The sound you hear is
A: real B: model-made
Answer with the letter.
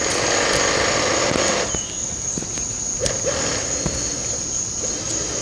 A